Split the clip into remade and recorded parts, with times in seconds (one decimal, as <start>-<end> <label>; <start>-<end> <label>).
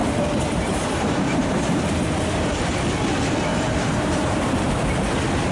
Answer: 0.0-1.8 remade; 1.8-3.5 recorded; 3.5-4.6 remade; 4.6-5.5 recorded